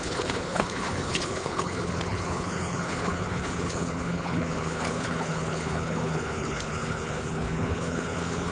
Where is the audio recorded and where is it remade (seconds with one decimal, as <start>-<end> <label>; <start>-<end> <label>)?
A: 0.0-8.5 remade